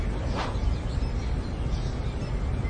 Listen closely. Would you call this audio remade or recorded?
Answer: recorded